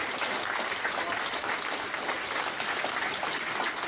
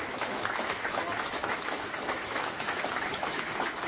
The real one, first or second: first